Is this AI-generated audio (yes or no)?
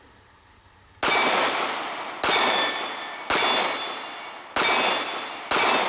no